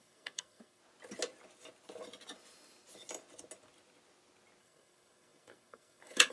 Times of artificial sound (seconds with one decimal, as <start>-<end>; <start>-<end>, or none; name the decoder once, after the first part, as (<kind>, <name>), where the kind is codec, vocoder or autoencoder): 0.0-0.8 (codec, SNAC); 4.6-6.3